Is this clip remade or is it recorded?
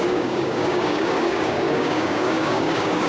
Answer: remade